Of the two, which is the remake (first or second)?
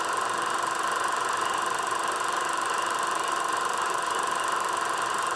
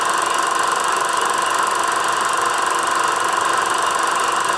first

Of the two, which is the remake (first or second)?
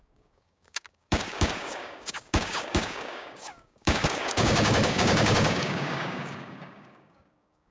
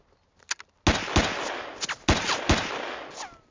first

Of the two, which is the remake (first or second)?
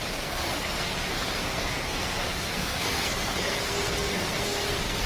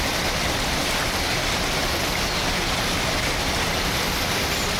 first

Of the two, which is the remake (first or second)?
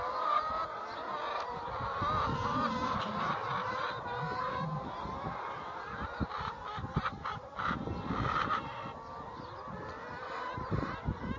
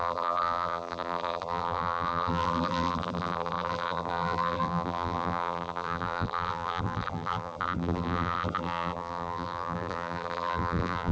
second